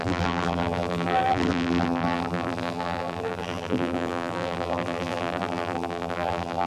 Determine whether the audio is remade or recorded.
remade